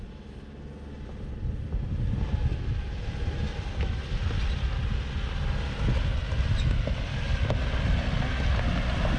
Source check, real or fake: real